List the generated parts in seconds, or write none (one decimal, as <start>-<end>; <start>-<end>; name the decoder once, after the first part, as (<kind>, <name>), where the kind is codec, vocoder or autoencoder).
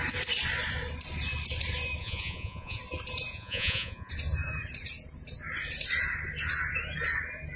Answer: 2.0-2.8 (vocoder, Vocos); 3.3-4.1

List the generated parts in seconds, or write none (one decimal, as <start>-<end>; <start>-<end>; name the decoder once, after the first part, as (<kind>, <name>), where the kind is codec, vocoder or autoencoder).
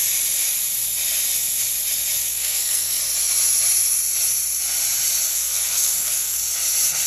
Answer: 2.3-3.0 (codec, SNAC); 5.3-6.4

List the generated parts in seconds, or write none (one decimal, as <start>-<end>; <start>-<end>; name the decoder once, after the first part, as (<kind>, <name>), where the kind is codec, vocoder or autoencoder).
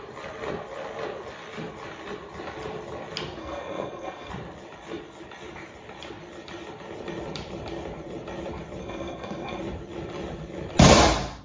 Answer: 3.4-4.3 (codec, SNAC); 8.8-9.6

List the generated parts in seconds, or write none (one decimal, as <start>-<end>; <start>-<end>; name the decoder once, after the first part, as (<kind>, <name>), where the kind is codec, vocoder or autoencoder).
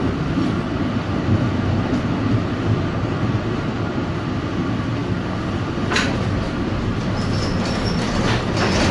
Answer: none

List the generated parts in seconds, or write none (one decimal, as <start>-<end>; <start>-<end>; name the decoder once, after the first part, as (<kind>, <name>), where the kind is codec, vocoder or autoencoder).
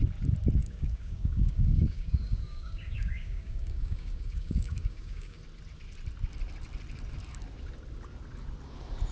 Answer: 0.6-5.4 (codec, DAC)